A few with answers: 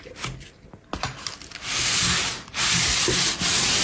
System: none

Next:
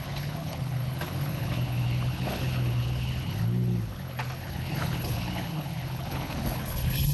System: codec, HILCodec